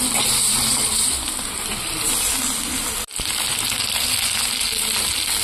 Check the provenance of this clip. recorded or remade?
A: recorded